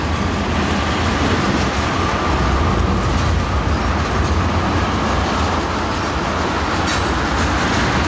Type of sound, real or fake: real